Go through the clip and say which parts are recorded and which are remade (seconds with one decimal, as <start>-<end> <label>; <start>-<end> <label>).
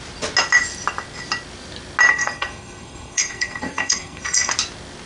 0.0-2.1 recorded; 2.1-4.5 remade; 4.5-5.1 recorded